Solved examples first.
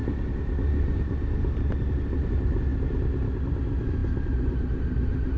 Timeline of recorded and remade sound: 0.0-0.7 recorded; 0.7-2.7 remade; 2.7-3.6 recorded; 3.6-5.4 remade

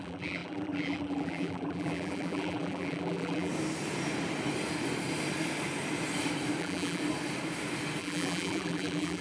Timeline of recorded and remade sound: 0.0-3.5 remade; 3.5-6.6 recorded; 6.6-7.0 remade; 7.0-8.0 recorded; 8.0-9.2 remade

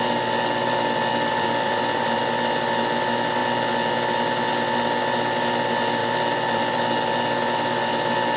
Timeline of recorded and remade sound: 0.0-1.1 recorded; 1.1-2.2 remade; 2.2-6.0 recorded; 6.0-6.6 remade; 6.6-8.4 recorded

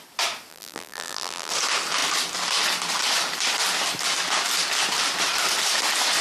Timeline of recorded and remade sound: 0.0-0.5 recorded; 0.5-1.5 remade; 1.5-6.2 recorded

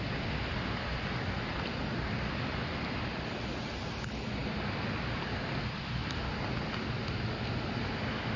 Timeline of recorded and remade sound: 0.0-4.4 recorded; 4.4-6.2 remade; 6.2-8.4 recorded

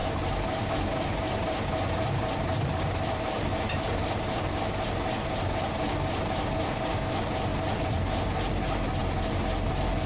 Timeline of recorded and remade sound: 0.0-0.7 remade; 0.7-3.5 recorded; 3.5-5.4 remade; 5.4-10.1 recorded